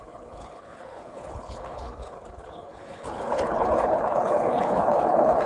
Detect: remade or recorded remade